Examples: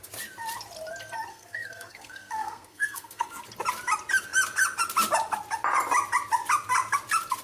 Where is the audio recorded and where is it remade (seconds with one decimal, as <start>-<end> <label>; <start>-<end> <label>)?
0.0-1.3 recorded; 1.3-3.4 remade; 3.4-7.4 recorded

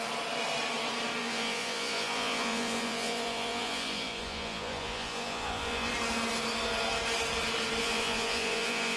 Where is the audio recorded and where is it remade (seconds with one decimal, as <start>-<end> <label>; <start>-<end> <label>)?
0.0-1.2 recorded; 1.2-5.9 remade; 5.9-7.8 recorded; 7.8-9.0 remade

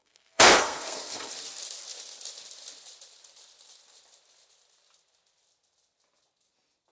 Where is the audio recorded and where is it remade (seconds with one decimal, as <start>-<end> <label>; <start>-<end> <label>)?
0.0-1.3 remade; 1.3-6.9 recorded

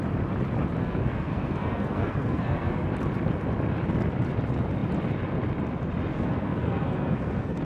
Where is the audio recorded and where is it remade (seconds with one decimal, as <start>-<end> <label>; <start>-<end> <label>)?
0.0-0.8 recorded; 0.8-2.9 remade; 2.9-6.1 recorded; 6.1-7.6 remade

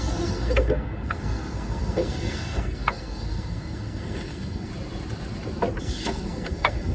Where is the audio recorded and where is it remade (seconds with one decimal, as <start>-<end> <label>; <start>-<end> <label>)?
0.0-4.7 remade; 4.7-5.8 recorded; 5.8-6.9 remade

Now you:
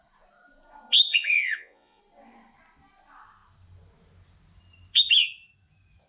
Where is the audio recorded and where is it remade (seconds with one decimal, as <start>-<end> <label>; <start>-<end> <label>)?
0.0-1.1 recorded; 1.1-2.0 remade; 2.0-6.1 recorded